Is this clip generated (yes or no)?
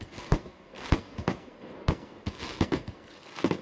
yes